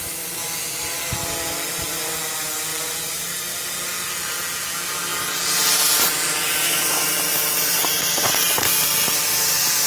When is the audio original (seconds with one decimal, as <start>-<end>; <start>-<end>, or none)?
0.0-9.9